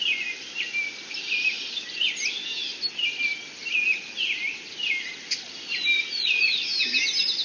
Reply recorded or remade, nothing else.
recorded